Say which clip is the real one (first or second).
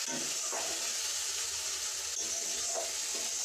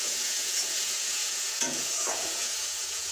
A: first